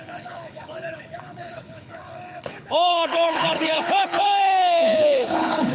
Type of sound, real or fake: fake